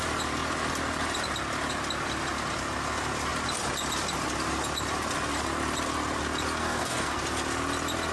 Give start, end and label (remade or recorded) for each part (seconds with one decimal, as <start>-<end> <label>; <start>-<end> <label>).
0.0-6.6 recorded; 6.6-7.2 remade; 7.2-8.1 recorded